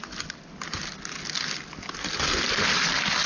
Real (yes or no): yes